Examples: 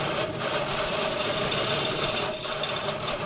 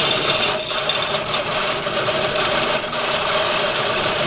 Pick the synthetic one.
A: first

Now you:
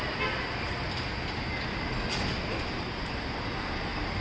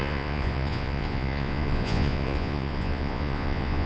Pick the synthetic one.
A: second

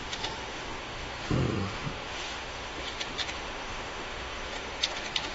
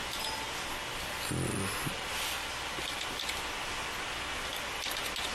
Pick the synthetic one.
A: first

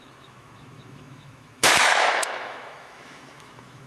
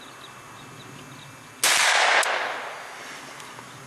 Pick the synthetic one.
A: first